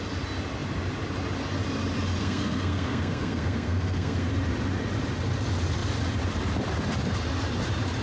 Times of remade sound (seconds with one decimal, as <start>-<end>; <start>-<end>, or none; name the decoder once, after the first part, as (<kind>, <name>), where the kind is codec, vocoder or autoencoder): 2.2-4.3 (codec, SNAC)